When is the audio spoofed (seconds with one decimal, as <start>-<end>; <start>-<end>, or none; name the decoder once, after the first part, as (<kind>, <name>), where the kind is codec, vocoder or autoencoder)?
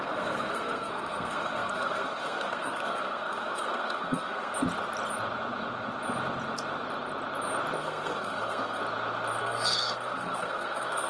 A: 0.0-4.5 (codec, SNAC); 7.8-8.8; 9.4-11.1